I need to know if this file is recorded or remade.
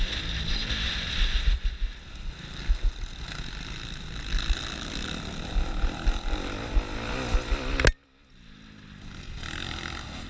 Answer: recorded